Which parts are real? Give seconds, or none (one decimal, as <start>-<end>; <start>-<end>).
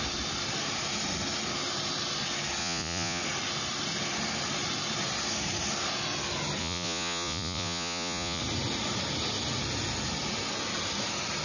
0.0-2.6; 3.2-6.6; 8.4-11.4